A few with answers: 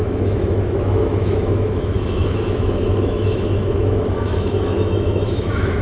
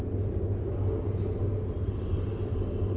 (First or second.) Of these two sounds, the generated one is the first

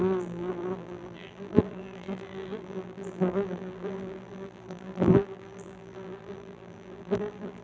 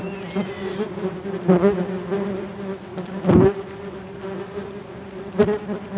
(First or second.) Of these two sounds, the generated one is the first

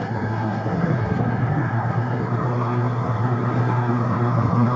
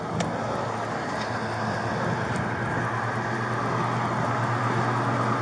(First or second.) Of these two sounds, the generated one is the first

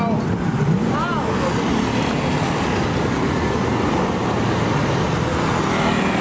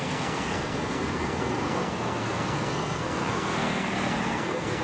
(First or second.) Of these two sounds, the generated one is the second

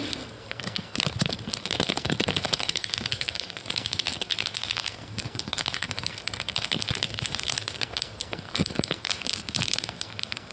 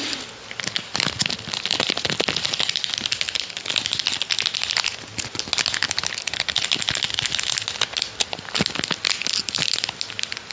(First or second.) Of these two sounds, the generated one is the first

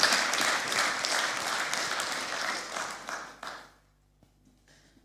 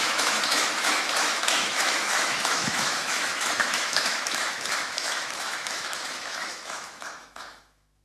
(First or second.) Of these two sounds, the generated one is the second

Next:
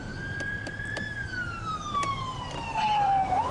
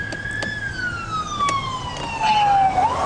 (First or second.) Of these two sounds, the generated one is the first